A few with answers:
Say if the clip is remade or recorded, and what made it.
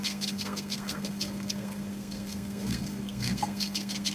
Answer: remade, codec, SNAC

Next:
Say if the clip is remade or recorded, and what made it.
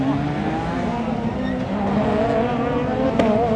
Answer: recorded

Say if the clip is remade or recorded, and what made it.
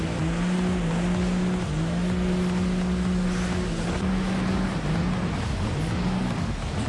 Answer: recorded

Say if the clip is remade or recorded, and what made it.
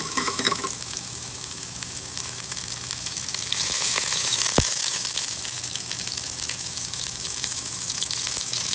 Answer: remade, autoencoder, DAC-VAE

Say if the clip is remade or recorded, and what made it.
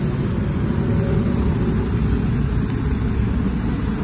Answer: recorded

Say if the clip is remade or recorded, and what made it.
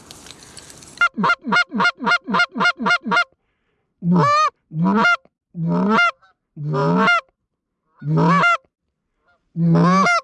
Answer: recorded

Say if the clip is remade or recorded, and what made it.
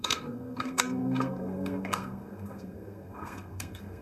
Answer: remade, codec, SNAC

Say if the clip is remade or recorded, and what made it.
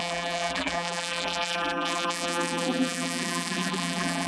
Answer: remade, vocoder, BigVGAN v2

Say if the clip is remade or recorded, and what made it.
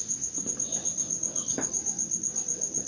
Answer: recorded